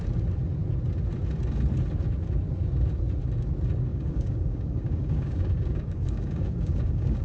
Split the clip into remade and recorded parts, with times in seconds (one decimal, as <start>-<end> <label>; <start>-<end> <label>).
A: 0.0-3.9 recorded; 3.9-7.2 remade